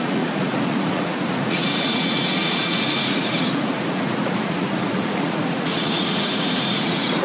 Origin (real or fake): fake